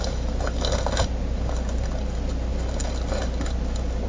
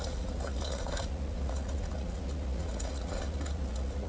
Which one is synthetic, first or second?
second